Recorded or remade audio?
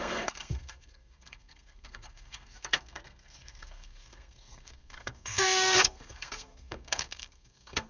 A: remade